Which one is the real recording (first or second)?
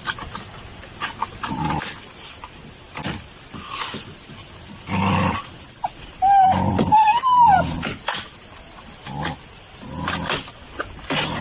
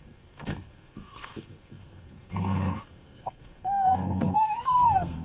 first